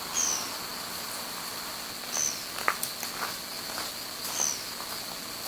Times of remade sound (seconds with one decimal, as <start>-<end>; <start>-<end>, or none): none